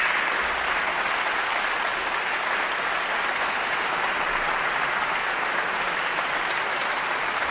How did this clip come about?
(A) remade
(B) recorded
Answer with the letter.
B